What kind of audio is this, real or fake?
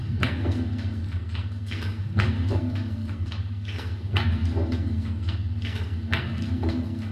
fake